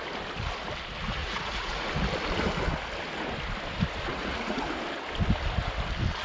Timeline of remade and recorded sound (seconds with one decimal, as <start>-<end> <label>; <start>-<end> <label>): 0.0-1.2 recorded; 1.2-1.9 remade; 1.9-4.1 recorded; 4.1-4.6 remade; 4.6-6.2 recorded